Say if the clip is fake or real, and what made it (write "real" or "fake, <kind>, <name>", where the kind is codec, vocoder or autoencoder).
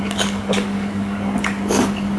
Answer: fake, codec, DAC